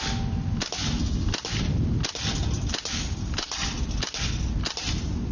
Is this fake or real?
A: real